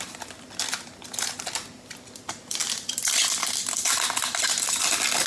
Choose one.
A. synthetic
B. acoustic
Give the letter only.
B